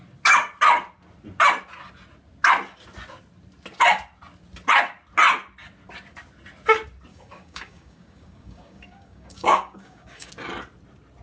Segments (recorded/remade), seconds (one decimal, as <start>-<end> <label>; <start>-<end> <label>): 0.0-7.1 recorded; 7.1-10.3 remade; 10.3-11.2 recorded